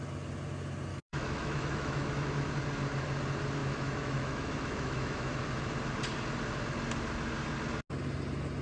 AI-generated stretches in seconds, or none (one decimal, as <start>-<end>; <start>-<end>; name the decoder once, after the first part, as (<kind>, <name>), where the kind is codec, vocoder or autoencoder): 0.9-2.5 (autoencoder, DAC-VAE); 3.6-5.3